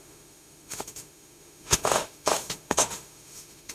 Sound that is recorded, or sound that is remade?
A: remade